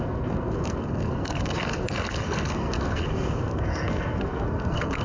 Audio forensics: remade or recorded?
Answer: remade